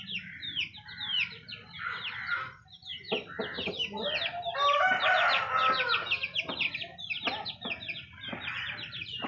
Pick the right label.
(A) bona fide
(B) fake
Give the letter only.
A